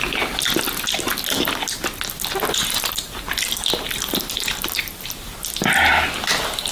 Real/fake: real